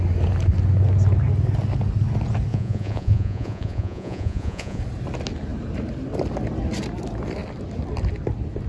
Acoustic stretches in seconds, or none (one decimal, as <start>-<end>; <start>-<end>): 0.0-2.5; 4.8-8.7